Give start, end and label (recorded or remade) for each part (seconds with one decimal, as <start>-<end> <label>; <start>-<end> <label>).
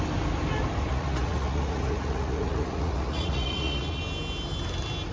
0.0-0.9 recorded; 0.9-4.0 remade; 4.0-5.1 recorded